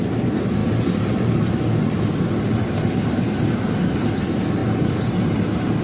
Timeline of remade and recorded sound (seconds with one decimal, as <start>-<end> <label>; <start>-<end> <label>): 0.0-5.8 recorded